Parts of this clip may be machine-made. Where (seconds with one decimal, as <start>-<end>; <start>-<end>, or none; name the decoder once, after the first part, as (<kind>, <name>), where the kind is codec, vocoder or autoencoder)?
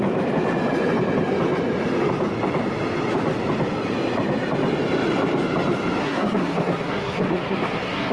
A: 6.0-8.1 (codec, SNAC)